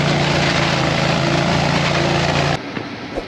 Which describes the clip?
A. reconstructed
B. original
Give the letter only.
B